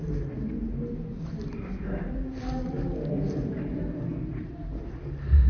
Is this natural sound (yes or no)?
yes